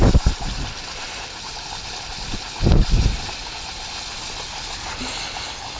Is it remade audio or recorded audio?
recorded